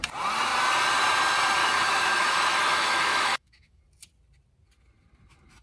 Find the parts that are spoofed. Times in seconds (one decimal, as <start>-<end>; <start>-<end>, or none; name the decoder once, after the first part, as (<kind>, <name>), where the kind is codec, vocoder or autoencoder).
1.6-3.8 (autoencoder, DAC-VAE)